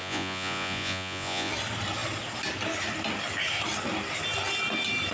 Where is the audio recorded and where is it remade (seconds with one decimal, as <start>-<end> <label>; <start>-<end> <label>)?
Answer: 0.0-1.5 remade; 1.5-5.1 recorded